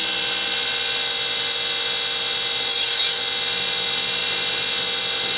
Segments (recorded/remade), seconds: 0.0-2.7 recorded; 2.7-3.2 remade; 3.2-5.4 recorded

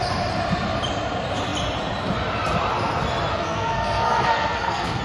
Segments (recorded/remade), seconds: 0.0-3.3 recorded; 3.3-5.0 remade

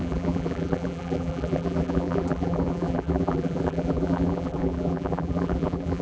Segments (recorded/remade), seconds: 0.0-6.0 remade

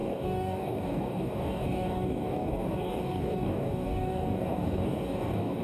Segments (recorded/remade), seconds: 0.0-5.6 remade

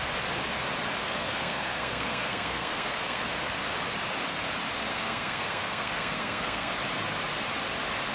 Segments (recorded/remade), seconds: 0.0-1.0 recorded; 1.0-3.2 remade; 3.2-4.9 recorded; 4.9-6.7 remade; 6.7-8.1 recorded